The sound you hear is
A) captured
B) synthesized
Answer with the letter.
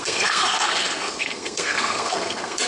B